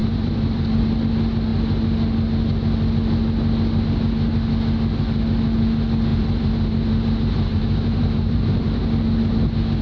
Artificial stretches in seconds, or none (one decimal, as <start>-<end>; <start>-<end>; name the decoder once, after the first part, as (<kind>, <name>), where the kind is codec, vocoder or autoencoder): 0.0-0.9 (vocoder, BigVGAN v2); 6.1-8.8